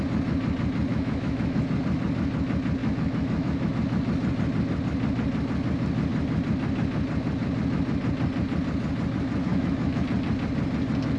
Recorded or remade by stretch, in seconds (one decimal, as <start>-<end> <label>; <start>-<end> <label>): 0.0-0.9 recorded; 0.9-1.6 remade; 1.6-2.8 recorded; 2.8-3.7 remade; 3.7-9.5 recorded; 9.5-10.0 remade; 10.0-11.2 recorded